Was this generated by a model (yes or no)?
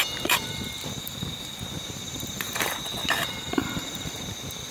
yes